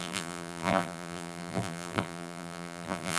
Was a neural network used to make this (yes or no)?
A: yes